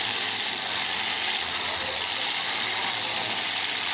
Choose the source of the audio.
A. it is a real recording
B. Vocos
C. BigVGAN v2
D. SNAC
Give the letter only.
A